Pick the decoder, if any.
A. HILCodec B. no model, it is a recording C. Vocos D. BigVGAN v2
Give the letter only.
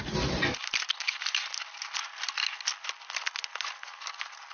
B